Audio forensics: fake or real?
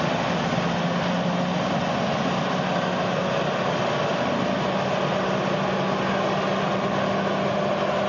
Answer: real